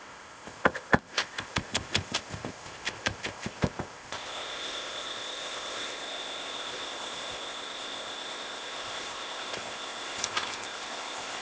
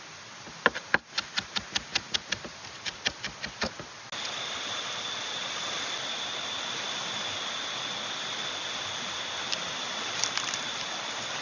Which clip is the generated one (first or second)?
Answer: first